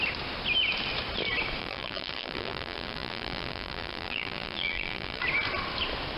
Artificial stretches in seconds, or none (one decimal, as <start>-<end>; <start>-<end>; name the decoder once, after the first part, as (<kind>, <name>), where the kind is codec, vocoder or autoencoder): 1.6-5.2 (vocoder, BigVGAN v2)